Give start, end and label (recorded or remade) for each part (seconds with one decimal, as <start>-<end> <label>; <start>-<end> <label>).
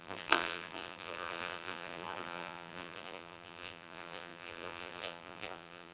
0.0-5.9 remade